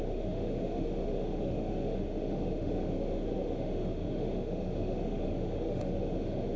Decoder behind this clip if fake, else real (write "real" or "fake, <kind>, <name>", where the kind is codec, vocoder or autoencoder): fake, autoencoder, DAC-VAE